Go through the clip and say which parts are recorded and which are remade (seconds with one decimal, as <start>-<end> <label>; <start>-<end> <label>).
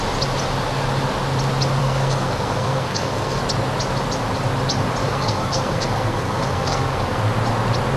0.0-1.8 recorded; 1.8-3.4 remade; 3.4-5.0 recorded; 5.0-7.2 remade; 7.2-8.0 recorded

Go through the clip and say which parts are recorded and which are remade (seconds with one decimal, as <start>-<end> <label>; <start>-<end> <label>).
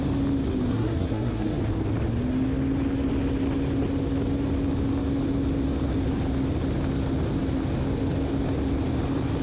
0.0-0.7 recorded; 0.7-1.6 remade; 1.6-9.4 recorded